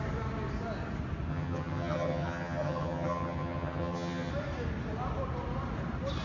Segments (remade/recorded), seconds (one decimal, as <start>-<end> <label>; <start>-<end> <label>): 0.0-1.3 recorded; 1.3-4.3 remade; 4.3-6.2 recorded